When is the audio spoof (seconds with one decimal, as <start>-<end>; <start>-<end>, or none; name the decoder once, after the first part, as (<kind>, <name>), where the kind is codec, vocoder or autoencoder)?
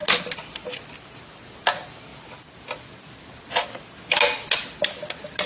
none